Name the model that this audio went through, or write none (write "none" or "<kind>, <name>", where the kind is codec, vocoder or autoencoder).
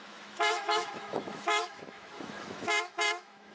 autoencoder, DAC-VAE